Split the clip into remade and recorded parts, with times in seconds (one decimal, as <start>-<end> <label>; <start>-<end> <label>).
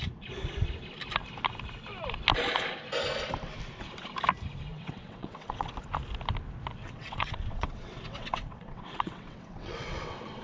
0.0-4.7 recorded; 4.7-5.7 remade; 5.7-6.8 recorded; 6.8-10.4 remade